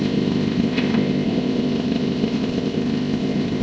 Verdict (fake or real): fake